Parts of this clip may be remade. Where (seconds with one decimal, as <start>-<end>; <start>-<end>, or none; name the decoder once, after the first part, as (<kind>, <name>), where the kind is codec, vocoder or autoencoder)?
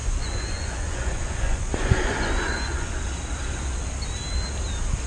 0.0-3.0 (vocoder, Vocos)